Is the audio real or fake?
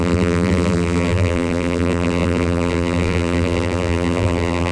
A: fake